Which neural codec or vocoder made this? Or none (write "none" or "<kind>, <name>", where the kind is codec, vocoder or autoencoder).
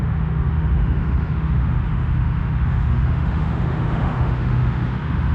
autoencoder, DAC-VAE